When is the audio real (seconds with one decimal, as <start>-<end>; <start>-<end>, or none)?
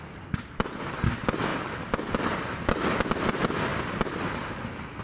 0.0-5.0